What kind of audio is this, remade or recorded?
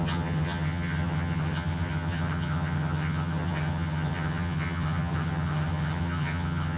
remade